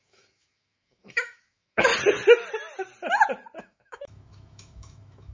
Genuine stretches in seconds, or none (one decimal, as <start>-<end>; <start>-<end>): 1.9-3.6